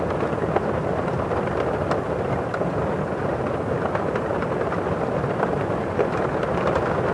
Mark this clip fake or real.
real